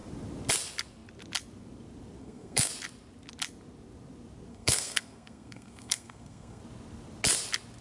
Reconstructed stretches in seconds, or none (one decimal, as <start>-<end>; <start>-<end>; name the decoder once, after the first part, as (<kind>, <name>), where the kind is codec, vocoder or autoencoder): 2.2-2.7 (codec, SNAC); 4.5-6.6